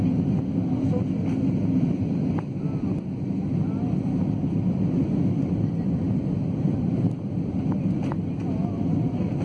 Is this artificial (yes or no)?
no